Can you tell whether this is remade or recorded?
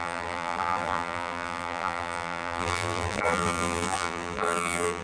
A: remade